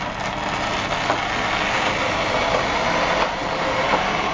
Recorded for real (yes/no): yes